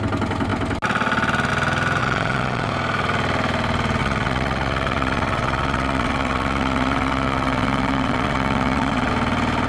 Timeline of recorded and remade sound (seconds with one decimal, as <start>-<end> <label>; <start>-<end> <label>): 0.0-2.0 recorded; 2.0-2.7 remade; 2.7-4.0 recorded; 4.0-9.1 remade; 9.1-9.7 recorded